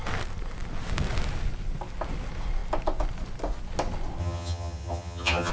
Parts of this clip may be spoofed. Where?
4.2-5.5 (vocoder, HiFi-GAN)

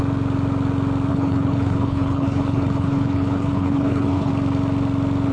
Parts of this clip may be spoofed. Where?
1.1-4.3 (codec, HILCodec)

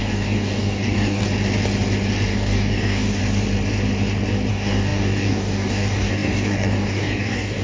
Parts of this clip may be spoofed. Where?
0.0-1.2 (codec, DAC); 2.3-3.2; 4.5-7.6

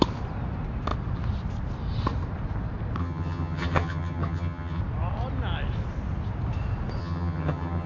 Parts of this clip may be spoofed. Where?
3.0-4.8 (vocoder, HiFi-GAN); 7.0-7.9